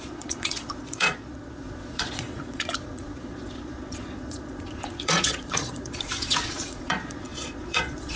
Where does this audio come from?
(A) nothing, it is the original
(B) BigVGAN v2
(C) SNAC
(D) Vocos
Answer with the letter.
D